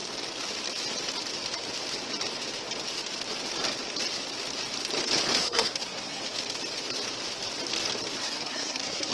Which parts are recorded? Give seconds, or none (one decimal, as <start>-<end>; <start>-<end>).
0.0-5.4; 6.2-8.2